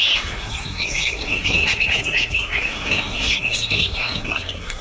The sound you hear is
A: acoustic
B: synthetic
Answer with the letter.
B